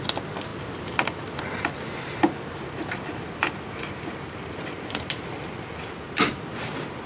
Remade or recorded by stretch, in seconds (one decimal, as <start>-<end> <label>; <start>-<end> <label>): 0.0-7.1 recorded